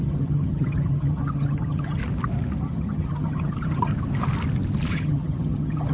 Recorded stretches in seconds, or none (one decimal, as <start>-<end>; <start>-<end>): 2.0-2.6; 3.9-4.9